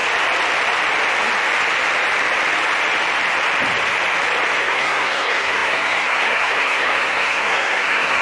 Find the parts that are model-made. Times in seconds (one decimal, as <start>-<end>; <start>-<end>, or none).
4.6-8.2